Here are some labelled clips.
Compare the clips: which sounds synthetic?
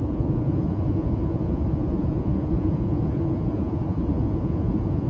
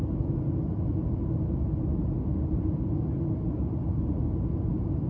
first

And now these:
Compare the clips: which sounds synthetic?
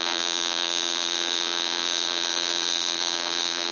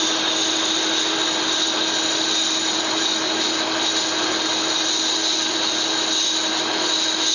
first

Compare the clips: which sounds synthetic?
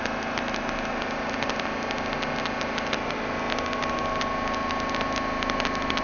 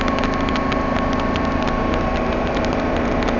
second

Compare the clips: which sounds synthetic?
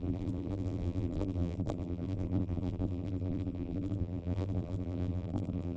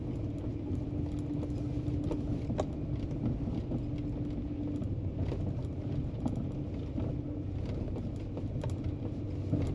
first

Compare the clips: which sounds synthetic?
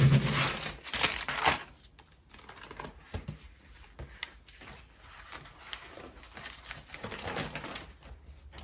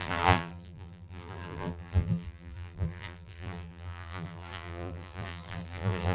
second